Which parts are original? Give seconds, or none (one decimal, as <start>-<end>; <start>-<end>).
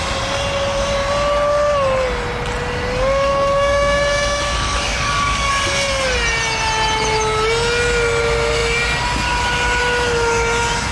0.0-3.3; 5.5-10.9